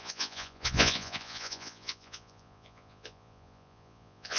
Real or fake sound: fake